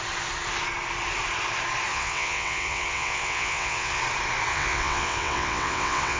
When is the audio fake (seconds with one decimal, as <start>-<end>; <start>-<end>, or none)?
1.9-4.0; 4.5-6.2